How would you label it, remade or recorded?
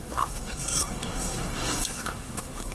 remade